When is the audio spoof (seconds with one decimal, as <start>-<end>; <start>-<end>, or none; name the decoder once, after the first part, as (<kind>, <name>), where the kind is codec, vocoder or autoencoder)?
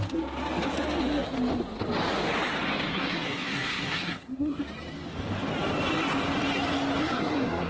2.9-4.6 (codec, SNAC); 7.0-7.7